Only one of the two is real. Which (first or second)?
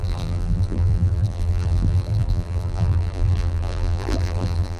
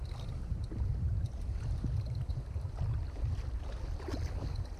second